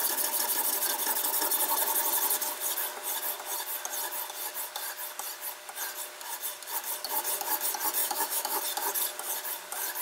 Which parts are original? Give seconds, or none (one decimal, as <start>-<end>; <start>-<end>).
0.0-8.0; 8.6-10.0